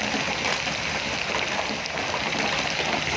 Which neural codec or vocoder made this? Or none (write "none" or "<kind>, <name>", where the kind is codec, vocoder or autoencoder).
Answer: none